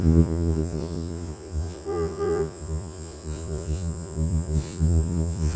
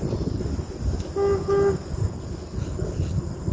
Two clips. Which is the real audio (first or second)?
second